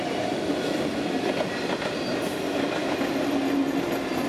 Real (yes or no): yes